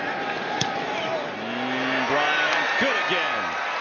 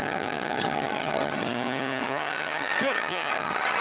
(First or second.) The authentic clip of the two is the first